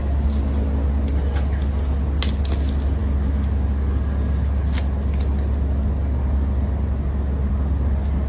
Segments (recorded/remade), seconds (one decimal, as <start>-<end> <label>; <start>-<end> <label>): 0.0-8.3 recorded